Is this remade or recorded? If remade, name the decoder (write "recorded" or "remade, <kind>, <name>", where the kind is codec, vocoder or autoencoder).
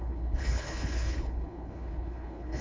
remade, codec, HILCodec